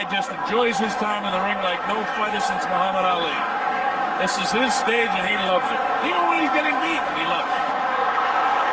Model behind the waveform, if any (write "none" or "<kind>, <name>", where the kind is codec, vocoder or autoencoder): codec, DAC